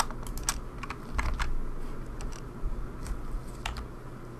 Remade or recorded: recorded